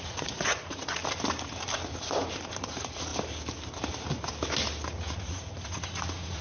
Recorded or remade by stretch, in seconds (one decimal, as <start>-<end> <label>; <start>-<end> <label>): 0.0-1.0 remade; 1.0-2.6 recorded; 2.6-3.1 remade; 3.1-4.9 recorded; 4.9-6.4 remade